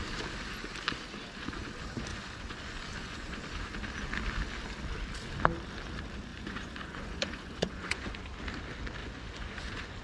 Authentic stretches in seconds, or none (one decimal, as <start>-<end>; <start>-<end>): 0.0-2.1; 3.4-6.3; 8.2-9.0